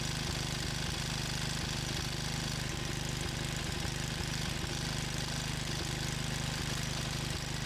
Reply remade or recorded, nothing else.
remade